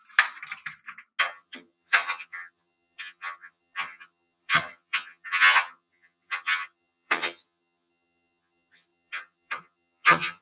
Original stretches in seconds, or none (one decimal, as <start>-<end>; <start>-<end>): 0.0-1.2